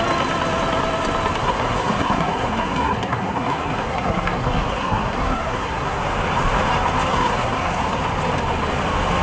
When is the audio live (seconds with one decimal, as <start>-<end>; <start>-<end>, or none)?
0.0-1.4; 6.0-7.1; 8.0-9.2